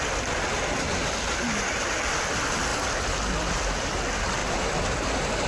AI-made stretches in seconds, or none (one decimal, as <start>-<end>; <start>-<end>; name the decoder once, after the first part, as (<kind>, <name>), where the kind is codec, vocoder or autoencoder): none